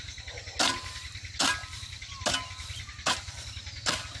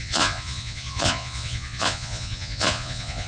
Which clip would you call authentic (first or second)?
first